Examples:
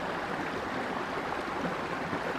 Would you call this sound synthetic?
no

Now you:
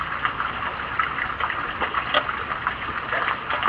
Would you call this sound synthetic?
no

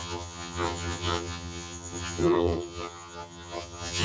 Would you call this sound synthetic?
yes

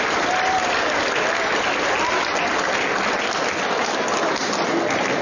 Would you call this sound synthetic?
no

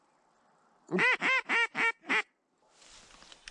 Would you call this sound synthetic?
no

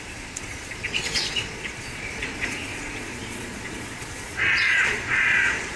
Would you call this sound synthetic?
yes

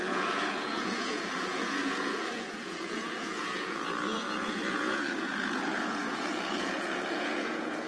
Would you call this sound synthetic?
yes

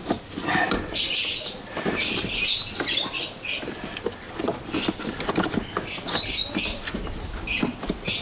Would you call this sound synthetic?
no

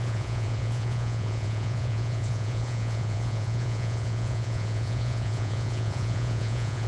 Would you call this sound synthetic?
yes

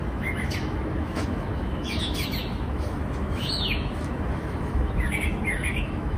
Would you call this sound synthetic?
yes